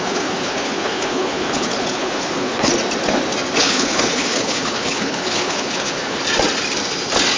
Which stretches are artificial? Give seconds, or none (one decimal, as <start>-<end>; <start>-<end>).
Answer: 0.0-2.7; 3.6-6.2